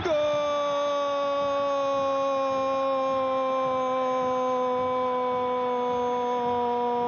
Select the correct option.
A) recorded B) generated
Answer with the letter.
A